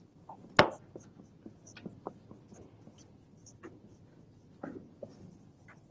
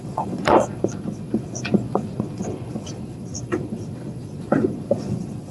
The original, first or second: first